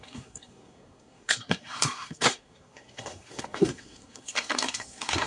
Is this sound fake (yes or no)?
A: yes